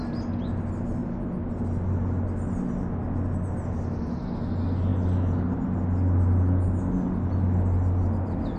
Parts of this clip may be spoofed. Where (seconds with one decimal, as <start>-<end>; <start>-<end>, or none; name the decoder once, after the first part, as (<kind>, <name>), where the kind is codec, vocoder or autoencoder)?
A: none